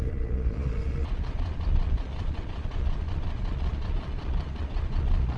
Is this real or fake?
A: fake